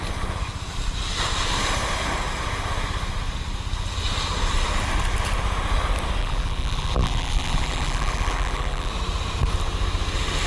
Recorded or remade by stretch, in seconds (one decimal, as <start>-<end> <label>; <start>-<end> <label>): 0.0-6.2 recorded; 6.2-8.9 remade; 8.9-10.5 recorded